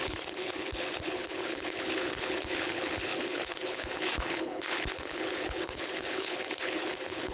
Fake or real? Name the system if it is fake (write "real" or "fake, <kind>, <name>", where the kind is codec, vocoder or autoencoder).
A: fake, codec, HILCodec